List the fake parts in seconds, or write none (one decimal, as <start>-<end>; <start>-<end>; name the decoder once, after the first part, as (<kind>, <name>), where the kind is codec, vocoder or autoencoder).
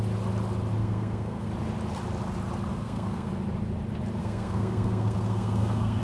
0.8-1.5 (codec, SNAC); 2.7-3.3; 4.2-6.0